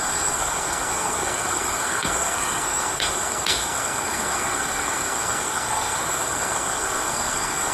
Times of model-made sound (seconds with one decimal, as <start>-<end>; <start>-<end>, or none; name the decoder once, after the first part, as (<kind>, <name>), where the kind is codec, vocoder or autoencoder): 0.0-7.7 (codec, SNAC)